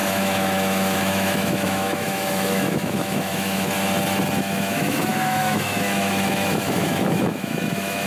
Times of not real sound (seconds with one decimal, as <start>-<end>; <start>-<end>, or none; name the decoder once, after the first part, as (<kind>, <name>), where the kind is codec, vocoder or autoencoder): 0.0-3.7 (autoencoder, DAC-VAE); 4.4-8.1